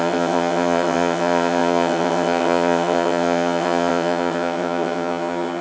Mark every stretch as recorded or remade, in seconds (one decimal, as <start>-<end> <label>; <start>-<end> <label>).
0.0-5.6 remade